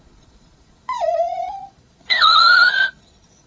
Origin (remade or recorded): remade